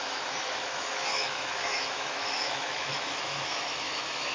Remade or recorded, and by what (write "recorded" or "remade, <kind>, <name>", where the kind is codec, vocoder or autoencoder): remade, autoencoder, DAC-VAE